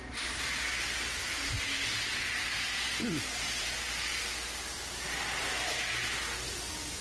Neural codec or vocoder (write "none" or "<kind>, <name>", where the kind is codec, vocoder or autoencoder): none